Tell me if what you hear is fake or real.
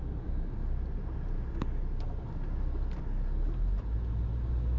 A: real